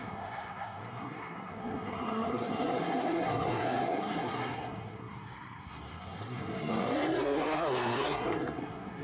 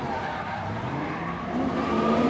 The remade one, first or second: first